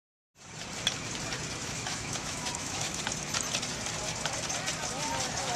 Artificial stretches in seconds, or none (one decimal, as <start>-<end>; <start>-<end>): 1.6-3.0